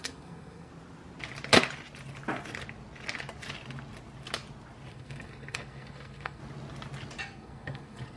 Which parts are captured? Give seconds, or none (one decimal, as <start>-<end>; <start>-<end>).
0.7-4.9; 6.4-7.2